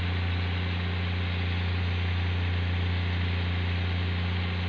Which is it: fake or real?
real